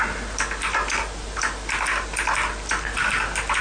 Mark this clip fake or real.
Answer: real